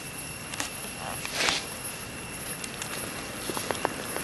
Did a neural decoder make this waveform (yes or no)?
no